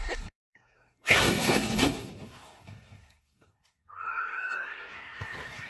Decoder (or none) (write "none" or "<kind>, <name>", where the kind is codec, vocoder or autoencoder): codec, SNAC